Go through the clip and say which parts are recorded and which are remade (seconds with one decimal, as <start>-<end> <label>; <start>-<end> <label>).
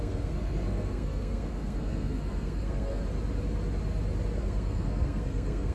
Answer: 0.0-3.0 remade; 3.0-4.4 recorded; 4.4-5.7 remade